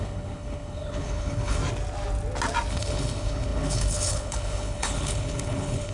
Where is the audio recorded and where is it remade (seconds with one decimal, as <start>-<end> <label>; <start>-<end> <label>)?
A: 0.0-1.6 remade; 1.6-2.7 recorded; 2.7-5.9 remade